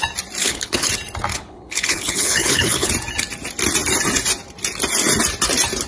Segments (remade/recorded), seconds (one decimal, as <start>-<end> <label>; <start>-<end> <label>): 0.0-0.4 recorded; 0.4-0.9 remade; 0.9-1.3 recorded; 1.3-2.9 remade; 2.9-5.9 recorded